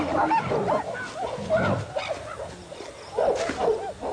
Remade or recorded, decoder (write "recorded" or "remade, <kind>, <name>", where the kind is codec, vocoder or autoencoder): recorded